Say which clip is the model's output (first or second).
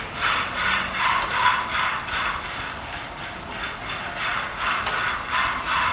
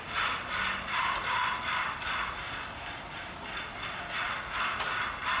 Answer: second